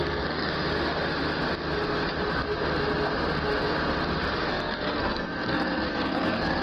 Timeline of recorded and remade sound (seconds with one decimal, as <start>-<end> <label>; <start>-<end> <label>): 0.0-0.5 remade; 0.5-4.5 recorded; 4.5-6.6 remade